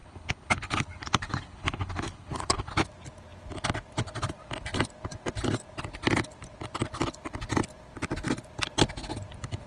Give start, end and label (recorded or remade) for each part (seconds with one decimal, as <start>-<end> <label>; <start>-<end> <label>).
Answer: 0.0-2.7 remade; 2.7-9.7 recorded